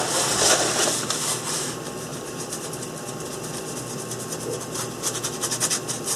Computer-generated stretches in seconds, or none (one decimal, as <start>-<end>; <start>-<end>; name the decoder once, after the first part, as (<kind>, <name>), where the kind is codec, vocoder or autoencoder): 2.1-2.7 (vocoder, BigVGAN v2)